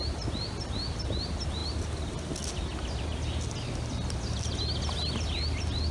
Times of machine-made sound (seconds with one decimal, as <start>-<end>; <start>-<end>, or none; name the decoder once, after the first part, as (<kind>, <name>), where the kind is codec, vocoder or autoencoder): none